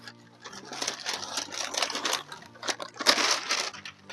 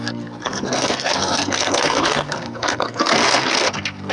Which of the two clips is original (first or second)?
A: first